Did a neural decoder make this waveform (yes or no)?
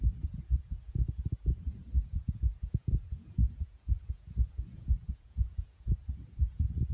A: yes